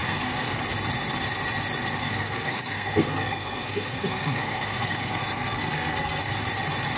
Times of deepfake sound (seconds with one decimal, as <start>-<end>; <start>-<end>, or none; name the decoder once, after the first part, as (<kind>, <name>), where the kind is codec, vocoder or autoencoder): 0.0-0.6 (codec, SNAC); 2.0-6.2